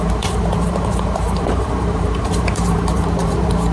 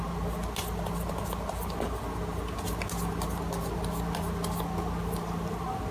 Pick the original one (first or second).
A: second